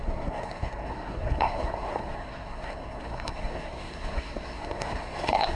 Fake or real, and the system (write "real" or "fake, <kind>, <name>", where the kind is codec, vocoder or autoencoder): fake, codec, SNAC